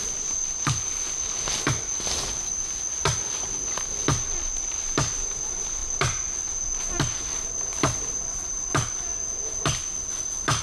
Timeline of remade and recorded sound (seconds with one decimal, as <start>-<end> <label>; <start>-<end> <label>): 0.0-10.6 recorded